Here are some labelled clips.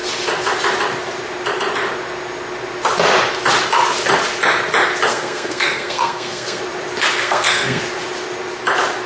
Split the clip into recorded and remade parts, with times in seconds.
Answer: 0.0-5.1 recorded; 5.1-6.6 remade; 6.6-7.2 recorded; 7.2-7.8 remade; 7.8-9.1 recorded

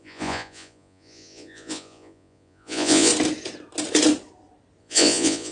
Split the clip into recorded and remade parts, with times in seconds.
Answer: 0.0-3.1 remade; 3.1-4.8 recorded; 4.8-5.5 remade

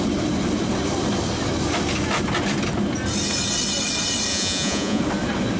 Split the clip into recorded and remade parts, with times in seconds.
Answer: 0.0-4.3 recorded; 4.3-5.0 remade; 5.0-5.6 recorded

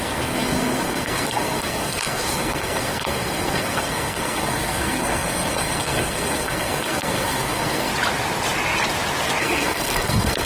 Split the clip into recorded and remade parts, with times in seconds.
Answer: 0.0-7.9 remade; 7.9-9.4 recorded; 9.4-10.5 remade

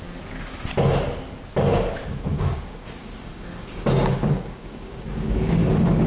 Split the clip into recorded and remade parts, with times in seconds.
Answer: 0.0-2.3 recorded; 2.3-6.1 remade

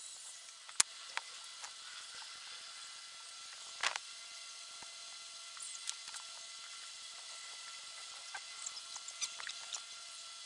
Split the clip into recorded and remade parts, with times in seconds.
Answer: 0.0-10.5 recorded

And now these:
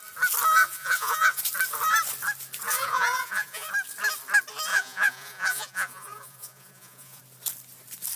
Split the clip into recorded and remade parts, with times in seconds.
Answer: 0.0-0.6 recorded; 0.6-1.4 remade; 1.4-2.7 recorded; 2.7-3.7 remade; 3.7-4.7 recorded; 4.7-7.2 remade; 7.2-8.2 recorded